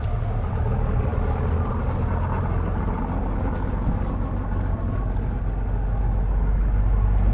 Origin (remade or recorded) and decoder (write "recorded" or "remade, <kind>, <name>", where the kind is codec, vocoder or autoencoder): recorded